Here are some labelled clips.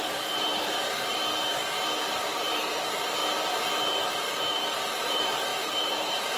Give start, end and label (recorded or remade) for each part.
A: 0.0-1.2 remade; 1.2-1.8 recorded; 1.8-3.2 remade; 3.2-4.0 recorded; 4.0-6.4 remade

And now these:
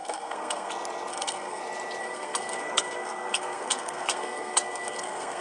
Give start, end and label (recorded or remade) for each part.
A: 0.0-0.7 remade; 0.7-1.1 recorded; 1.1-1.6 remade; 1.6-2.0 recorded; 2.0-5.4 remade